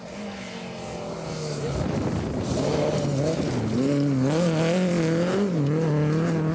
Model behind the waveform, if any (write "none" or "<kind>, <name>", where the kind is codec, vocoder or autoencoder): none